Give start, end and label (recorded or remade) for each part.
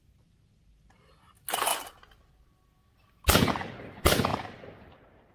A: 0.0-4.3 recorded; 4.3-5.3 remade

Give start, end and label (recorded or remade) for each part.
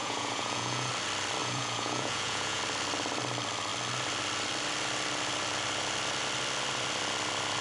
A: 0.0-0.9 remade; 0.9-1.4 recorded; 1.4-2.6 remade; 2.6-7.6 recorded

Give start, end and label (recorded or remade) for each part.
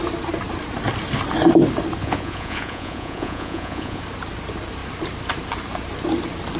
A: 0.0-2.0 recorded; 2.0-4.0 remade; 4.0-6.6 recorded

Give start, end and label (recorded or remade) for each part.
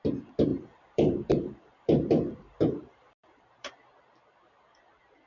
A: 0.0-0.5 recorded; 0.5-3.7 remade; 3.7-5.3 recorded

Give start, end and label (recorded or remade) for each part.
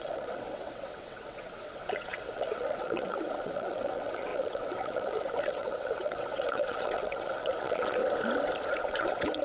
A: 0.0-8.0 remade; 8.0-8.8 recorded; 8.8-9.4 remade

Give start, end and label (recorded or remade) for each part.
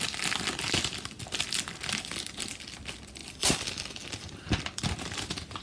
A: 0.0-3.2 recorded; 3.2-4.6 remade; 4.6-5.6 recorded